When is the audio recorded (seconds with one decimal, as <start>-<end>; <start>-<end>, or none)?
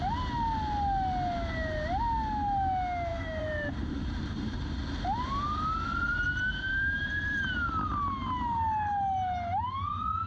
0.0-3.1; 4.6-5.9; 7.7-10.3